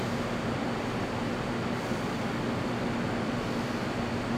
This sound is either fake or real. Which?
real